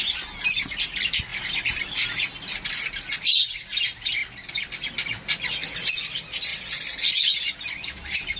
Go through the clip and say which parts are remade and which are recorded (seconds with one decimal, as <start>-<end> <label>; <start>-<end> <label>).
0.0-8.4 recorded